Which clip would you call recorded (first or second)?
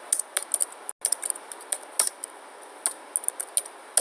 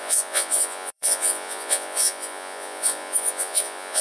first